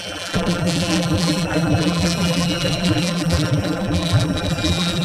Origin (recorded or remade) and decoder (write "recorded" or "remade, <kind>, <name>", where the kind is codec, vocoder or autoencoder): remade, vocoder, BigVGAN v2